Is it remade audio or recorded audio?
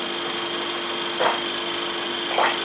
recorded